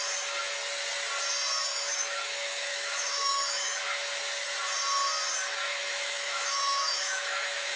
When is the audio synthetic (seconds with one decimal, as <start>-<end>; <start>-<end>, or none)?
1.7-3.8; 5.7-7.8